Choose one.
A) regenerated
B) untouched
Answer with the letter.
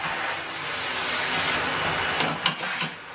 B